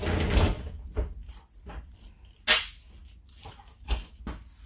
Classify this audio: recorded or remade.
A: recorded